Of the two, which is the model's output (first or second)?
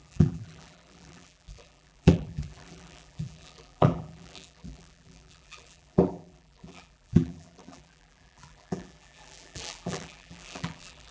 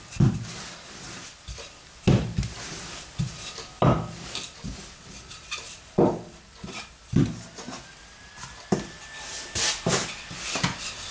first